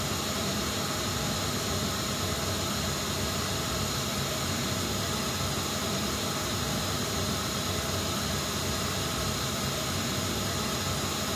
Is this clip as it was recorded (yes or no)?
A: yes